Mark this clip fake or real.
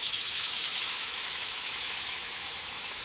fake